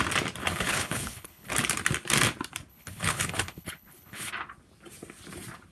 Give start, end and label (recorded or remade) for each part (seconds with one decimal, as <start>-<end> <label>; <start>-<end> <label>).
0.0-0.4 recorded; 0.4-1.5 remade; 1.5-2.7 recorded; 2.7-4.3 remade; 4.3-5.7 recorded

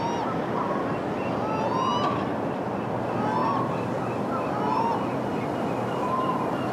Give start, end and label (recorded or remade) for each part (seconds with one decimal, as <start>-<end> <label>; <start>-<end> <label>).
0.0-6.7 recorded

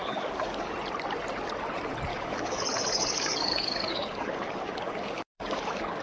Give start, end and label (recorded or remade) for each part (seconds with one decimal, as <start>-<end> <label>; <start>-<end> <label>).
0.0-0.7 remade; 0.7-2.1 recorded; 2.1-6.0 remade

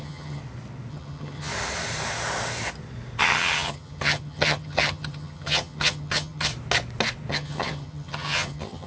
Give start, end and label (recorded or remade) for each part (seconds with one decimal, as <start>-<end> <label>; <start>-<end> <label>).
0.0-0.4 remade; 0.4-0.9 recorded; 0.9-1.5 remade; 1.5-3.2 recorded; 3.2-6.5 remade; 6.5-7.3 recorded; 7.3-8.9 remade